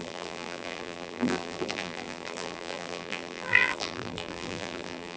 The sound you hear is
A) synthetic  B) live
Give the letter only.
A